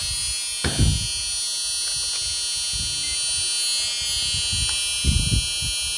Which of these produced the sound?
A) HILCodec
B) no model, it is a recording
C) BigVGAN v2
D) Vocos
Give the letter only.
B